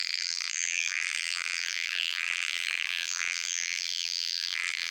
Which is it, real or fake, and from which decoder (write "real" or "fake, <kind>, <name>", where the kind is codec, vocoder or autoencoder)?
fake, vocoder, BigVGAN v2